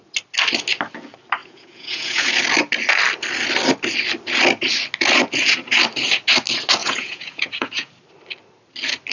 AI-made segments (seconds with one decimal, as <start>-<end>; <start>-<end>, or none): 1.4-2.3; 6.8-7.9